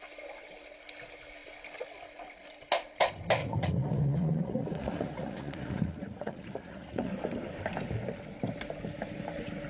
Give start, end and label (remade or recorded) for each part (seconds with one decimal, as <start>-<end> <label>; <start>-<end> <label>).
0.0-3.4 recorded; 3.4-7.1 remade; 7.1-9.7 recorded